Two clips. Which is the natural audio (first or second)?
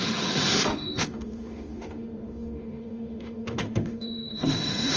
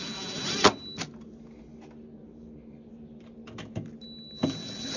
second